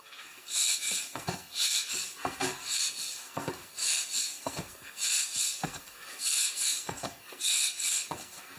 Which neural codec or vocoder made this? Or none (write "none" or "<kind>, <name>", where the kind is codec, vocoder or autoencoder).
codec, SNAC